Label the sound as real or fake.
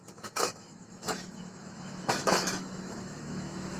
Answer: fake